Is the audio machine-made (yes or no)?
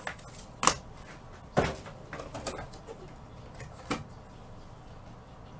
no